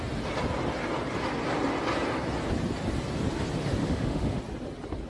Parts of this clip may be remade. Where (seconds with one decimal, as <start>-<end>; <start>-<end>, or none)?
3.8-4.4